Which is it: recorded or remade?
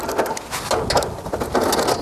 recorded